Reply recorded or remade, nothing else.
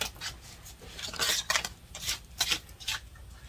recorded